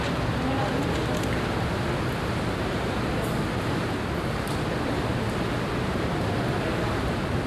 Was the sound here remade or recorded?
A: recorded